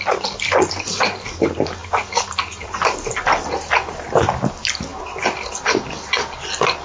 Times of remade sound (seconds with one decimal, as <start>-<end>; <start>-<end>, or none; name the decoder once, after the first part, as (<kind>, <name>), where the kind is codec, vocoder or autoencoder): none